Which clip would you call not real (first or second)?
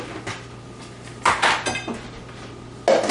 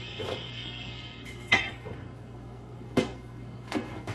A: second